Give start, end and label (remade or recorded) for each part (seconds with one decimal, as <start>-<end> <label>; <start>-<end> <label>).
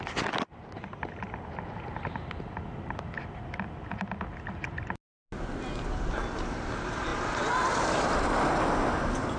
0.0-9.4 recorded